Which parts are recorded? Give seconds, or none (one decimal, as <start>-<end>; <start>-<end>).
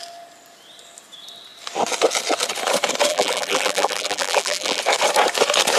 0.0-3.1; 4.8-5.8